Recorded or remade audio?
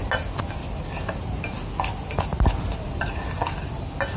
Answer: recorded